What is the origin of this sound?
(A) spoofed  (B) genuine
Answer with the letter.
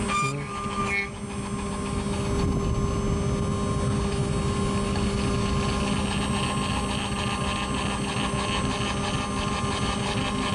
B